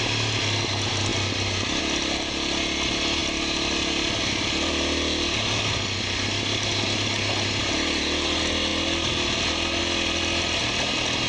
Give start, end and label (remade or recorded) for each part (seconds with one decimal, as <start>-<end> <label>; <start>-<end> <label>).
0.0-11.3 recorded